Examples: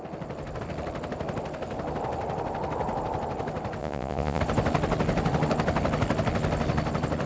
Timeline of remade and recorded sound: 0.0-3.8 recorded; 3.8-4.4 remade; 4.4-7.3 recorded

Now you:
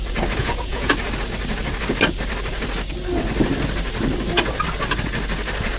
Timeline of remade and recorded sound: 0.0-0.4 recorded; 0.4-0.9 remade; 0.9-5.8 recorded

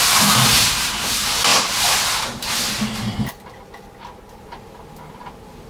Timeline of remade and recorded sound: 0.0-5.7 recorded

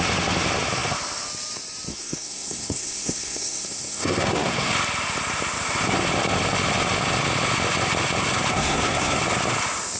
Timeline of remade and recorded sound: 0.0-1.9 recorded; 1.9-4.7 remade; 4.7-8.5 recorded; 8.5-9.2 remade; 9.2-10.0 recorded

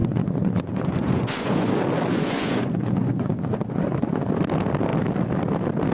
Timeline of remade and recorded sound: 0.0-1.7 remade; 1.7-2.1 recorded; 2.1-4.3 remade; 4.3-5.9 recorded